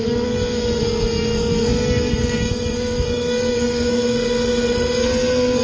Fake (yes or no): yes